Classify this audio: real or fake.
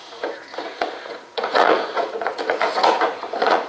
fake